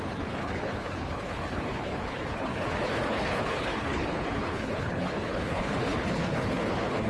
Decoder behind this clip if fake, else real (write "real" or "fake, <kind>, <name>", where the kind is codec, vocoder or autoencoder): fake, codec, HILCodec